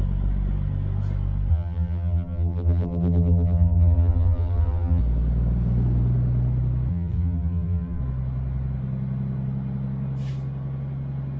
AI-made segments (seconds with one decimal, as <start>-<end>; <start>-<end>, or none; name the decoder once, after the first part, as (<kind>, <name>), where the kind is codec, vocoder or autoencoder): 1.5-5.0 (vocoder, BigVGAN v2); 6.9-8.0

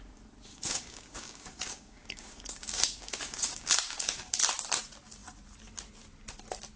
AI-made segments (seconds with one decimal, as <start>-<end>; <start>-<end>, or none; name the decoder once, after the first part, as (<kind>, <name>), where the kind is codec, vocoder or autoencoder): 0.5-4.4 (codec, DAC)

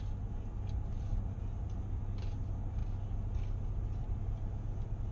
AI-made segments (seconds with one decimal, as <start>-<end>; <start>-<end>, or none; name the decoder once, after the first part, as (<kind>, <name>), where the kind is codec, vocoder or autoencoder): none